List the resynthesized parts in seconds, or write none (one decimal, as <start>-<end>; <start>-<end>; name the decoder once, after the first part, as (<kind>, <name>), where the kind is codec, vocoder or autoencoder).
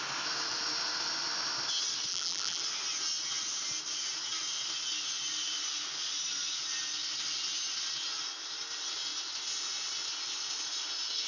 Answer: 2.1-2.6 (vocoder, BigVGAN v2)